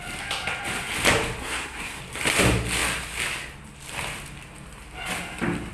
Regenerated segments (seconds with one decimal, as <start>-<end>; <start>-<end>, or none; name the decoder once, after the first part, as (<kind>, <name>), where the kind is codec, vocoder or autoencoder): 1.4-2.0 (codec, SNAC)